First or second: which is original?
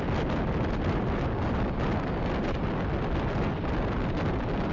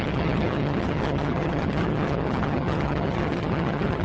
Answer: first